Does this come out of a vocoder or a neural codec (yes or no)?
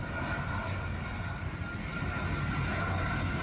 no